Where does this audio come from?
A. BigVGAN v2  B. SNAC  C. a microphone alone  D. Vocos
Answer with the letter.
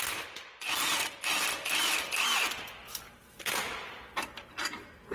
C